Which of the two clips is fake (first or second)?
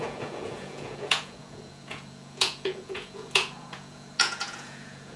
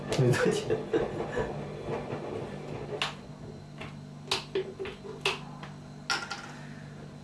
first